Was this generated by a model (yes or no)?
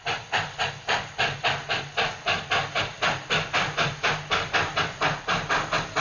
no